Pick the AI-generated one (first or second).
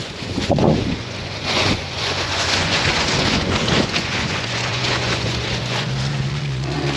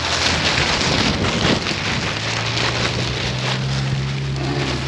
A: first